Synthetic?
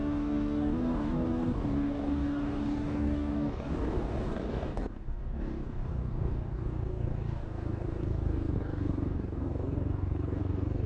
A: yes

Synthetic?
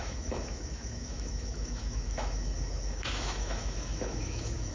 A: yes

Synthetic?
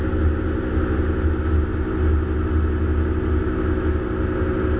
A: no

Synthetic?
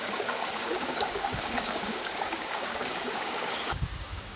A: yes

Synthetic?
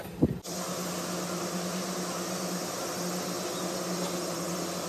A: no